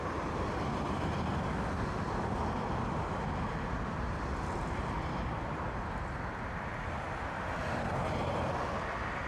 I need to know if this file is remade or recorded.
recorded